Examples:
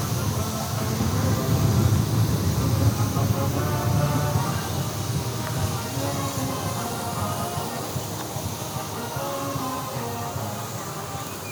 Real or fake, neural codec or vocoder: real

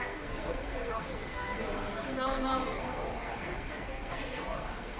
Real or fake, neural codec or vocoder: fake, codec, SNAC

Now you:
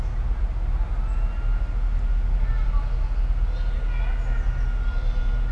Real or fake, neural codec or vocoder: real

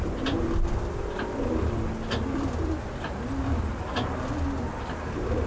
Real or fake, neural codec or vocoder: real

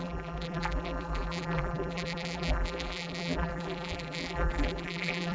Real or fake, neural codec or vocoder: fake, vocoder, BigVGAN v2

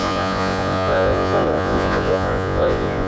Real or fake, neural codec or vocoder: fake, vocoder, Vocos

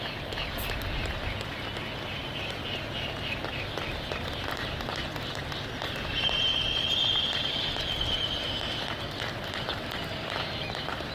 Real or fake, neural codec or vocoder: real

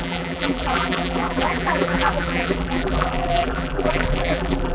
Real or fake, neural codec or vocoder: fake, vocoder, BigVGAN v2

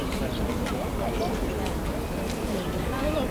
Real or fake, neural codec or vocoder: real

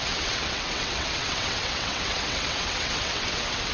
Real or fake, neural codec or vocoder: fake, vocoder, WaveNeXt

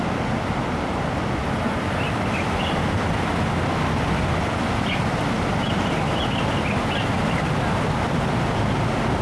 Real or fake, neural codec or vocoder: real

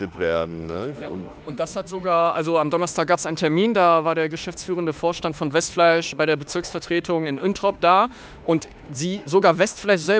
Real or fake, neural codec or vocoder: fake, autoencoder, DAC-VAE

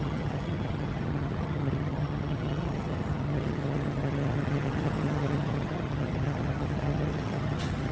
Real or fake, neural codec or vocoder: fake, vocoder, HiFi-GAN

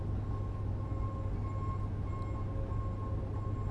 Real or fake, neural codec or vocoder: real